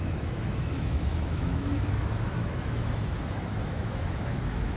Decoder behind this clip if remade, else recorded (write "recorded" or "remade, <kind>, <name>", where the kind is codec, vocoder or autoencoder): remade, autoencoder, DAC-VAE